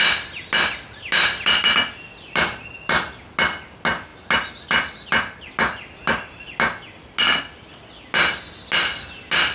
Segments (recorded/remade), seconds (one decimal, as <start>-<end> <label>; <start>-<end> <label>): 0.0-9.5 recorded